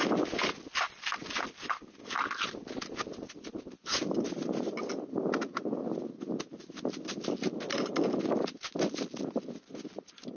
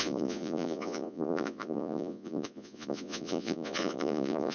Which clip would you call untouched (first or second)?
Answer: first